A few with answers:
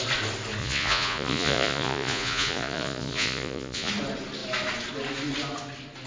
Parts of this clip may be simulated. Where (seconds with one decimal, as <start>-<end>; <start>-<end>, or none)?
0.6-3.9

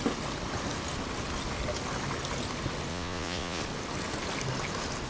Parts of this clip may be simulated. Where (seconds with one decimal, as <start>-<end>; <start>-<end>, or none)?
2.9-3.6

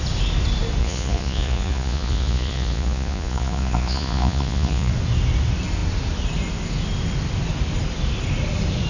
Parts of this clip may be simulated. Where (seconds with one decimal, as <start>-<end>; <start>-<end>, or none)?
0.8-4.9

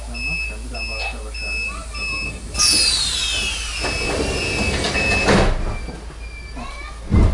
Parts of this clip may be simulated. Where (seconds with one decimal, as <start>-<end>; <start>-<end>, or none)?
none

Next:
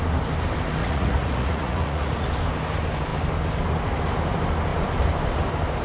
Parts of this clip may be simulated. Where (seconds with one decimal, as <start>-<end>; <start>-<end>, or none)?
0.8-2.3